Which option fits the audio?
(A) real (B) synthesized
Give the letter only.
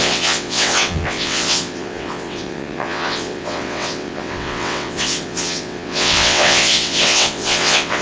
B